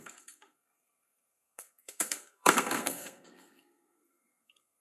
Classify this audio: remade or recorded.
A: remade